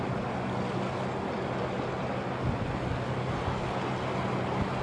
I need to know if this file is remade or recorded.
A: recorded